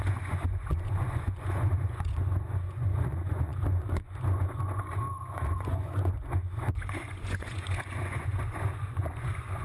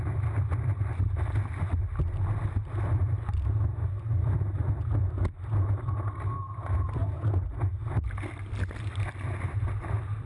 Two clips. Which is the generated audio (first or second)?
first